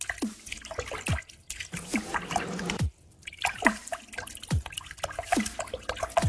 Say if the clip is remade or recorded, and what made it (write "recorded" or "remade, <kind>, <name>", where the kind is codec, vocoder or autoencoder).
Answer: recorded